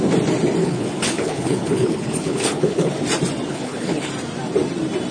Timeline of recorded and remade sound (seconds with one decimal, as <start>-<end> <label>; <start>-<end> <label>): 0.0-0.6 recorded; 0.6-2.9 remade; 2.9-3.5 recorded; 3.5-4.1 remade; 4.1-5.1 recorded